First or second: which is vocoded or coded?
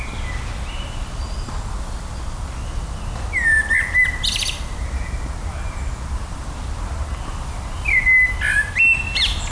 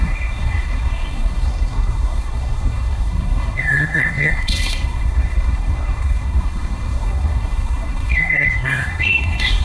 second